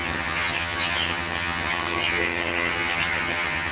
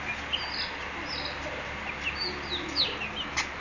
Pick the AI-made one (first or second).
first